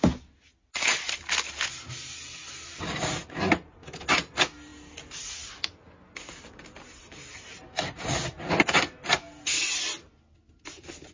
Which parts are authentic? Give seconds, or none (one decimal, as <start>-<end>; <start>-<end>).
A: 0.0-11.1